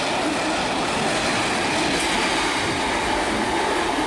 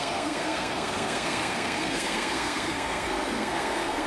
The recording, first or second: first